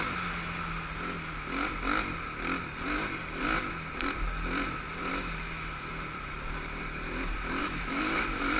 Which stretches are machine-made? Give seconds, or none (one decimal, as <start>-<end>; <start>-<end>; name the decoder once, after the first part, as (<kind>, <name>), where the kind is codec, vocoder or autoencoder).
5.1-5.9 (autoencoder, DAC-VAE); 7.6-8.6